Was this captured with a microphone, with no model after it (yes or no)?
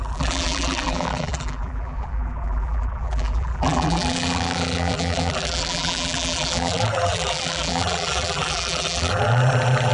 no